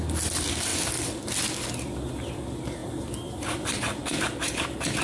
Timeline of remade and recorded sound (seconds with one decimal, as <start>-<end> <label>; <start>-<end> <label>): 0.0-2.8 recorded; 2.8-3.8 remade; 3.8-5.0 recorded